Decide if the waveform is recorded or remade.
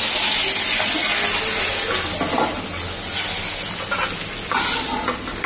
recorded